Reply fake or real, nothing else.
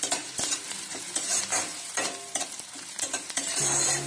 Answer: fake